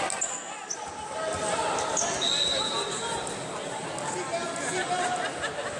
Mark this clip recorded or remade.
recorded